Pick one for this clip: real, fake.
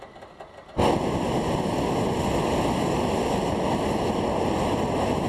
real